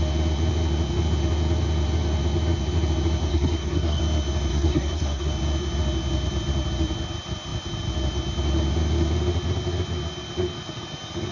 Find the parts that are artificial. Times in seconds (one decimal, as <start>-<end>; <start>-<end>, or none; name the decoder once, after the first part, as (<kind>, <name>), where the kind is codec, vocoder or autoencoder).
3.3-4.0 (codec, SNAC); 4.5-5.3

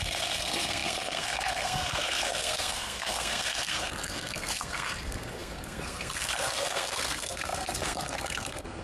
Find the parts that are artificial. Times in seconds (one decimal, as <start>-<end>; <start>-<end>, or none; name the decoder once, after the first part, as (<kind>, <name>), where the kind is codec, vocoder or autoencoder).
0.0-8.8 (codec, SNAC)

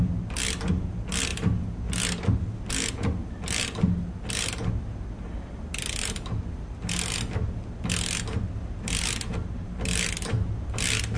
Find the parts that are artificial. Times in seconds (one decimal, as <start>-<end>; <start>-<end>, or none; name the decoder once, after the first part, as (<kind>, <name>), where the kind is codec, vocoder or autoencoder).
none